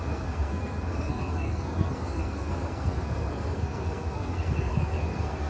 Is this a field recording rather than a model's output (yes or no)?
no